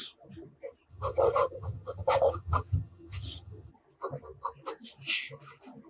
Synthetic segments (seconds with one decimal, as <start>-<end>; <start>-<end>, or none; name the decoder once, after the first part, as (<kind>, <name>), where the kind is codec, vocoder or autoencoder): 0.9-3.7 (vocoder, HiFi-GAN)